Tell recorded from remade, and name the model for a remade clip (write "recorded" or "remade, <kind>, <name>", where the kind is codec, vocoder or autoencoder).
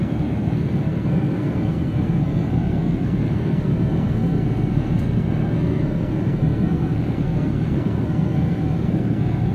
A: remade, codec, SNAC